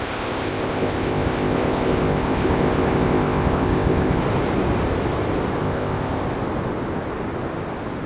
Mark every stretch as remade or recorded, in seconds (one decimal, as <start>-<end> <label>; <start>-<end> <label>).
0.0-4.2 remade; 4.2-5.6 recorded; 5.6-6.2 remade; 6.2-8.1 recorded